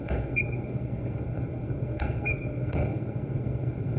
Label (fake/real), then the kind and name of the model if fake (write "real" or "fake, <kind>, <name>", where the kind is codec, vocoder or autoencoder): fake, codec, SNAC